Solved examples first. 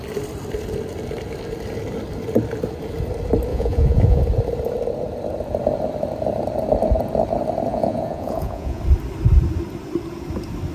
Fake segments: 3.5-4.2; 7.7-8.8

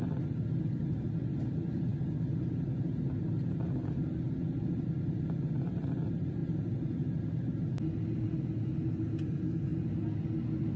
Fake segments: none

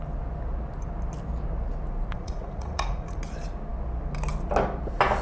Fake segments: 2.1-3.2

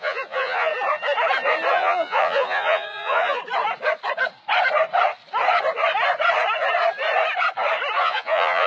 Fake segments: 0.0-0.7; 1.7-3.4; 8.0-8.7

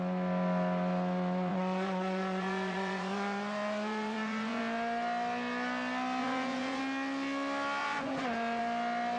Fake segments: 1.5-4.6; 6.2-6.8; 7.8-8.6

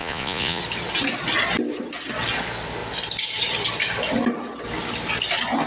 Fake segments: 0.0-0.6

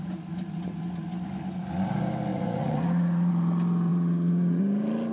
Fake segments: 2.3-3.3; 3.9-4.6

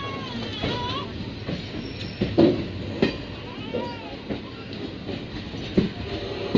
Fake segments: none